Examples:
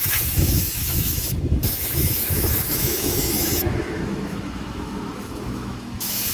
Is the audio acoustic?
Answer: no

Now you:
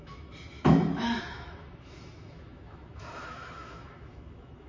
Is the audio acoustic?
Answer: no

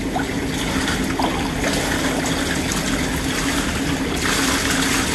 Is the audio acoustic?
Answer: yes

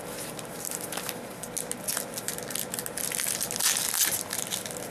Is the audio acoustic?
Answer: yes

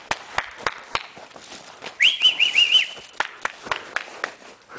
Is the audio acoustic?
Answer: yes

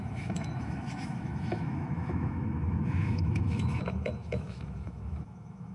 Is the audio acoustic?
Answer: no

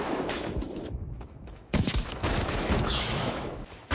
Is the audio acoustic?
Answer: no